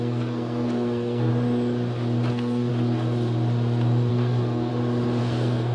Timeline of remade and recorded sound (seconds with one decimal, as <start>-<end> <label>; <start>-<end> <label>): 0.0-1.3 remade; 1.3-2.3 recorded; 2.3-2.7 remade; 2.7-4.1 recorded; 4.1-4.7 remade; 4.7-5.2 recorded; 5.2-5.7 remade